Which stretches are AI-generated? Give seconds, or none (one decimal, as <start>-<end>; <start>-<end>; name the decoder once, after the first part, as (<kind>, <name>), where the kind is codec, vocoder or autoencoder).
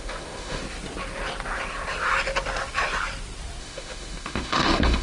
0.0-0.6 (autoencoder, DAC-VAE); 3.6-5.0